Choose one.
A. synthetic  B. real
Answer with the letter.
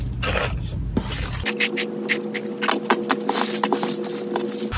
B